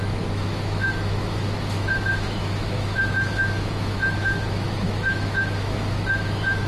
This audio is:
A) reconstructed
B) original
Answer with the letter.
A